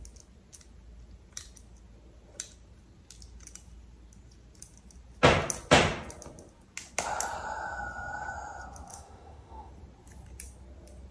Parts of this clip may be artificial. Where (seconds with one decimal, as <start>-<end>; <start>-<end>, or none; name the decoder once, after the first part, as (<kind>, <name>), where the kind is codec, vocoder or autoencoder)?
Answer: 8.9-9.7 (autoencoder, DAC-VAE)